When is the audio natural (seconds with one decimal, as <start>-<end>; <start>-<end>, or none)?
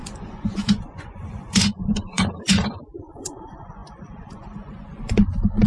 none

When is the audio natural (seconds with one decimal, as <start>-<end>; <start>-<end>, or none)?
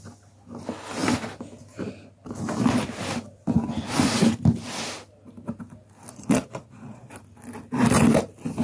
0.0-6.1; 7.1-8.6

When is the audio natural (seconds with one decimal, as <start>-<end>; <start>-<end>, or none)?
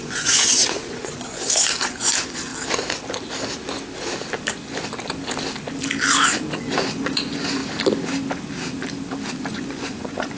2.5-6.6; 7.6-9.5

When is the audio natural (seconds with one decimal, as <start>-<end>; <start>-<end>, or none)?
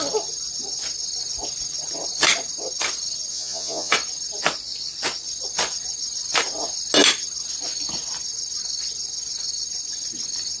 0.0-3.3; 3.9-10.6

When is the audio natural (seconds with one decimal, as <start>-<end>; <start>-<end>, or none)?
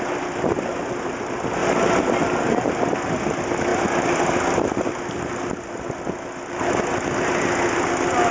0.0-8.3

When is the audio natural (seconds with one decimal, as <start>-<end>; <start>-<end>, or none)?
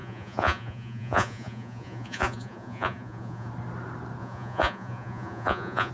3.5-4.2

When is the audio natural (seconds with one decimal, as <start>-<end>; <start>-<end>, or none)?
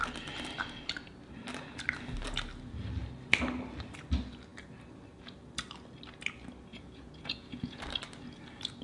0.0-6.7; 7.8-8.8